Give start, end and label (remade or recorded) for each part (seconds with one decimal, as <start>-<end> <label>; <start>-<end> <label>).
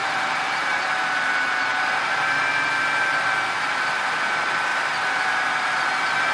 0.0-0.9 remade; 0.9-4.7 recorded; 4.7-5.7 remade; 5.7-6.3 recorded